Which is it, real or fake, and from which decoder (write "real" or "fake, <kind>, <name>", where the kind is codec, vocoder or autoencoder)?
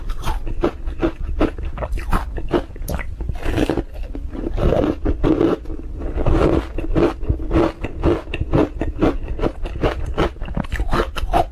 real